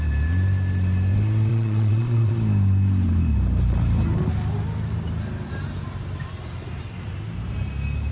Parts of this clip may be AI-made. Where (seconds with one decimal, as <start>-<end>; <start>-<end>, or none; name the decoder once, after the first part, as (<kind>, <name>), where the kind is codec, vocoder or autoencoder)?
1.5-2.3 (vocoder, Vocos)